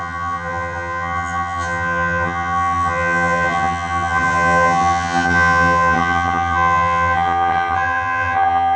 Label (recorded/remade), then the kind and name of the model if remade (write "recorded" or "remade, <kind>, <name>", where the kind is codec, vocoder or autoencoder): remade, vocoder, HiFi-GAN